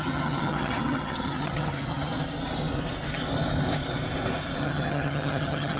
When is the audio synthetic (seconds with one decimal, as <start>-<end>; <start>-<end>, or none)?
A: 0.0-2.1; 4.6-5.8